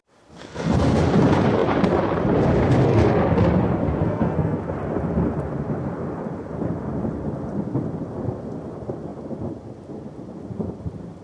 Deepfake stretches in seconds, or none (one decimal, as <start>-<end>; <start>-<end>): 0.4-1.0; 4.0-4.6